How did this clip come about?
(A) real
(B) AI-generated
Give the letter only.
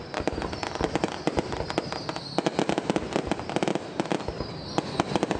A